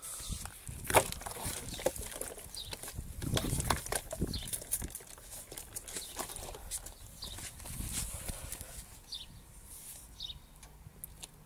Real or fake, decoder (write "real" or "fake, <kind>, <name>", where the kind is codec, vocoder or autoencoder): real